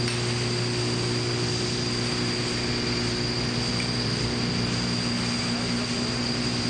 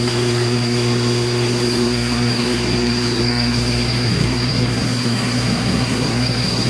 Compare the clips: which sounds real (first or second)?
first